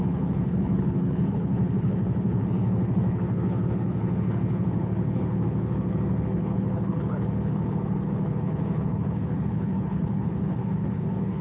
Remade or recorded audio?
remade